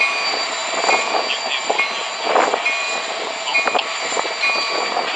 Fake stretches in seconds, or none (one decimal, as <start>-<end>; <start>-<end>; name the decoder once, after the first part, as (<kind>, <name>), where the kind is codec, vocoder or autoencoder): none